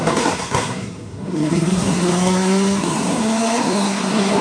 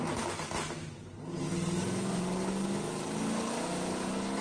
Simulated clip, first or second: first